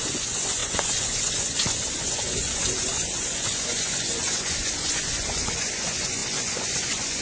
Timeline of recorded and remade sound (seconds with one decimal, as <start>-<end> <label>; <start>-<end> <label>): 0.0-7.2 remade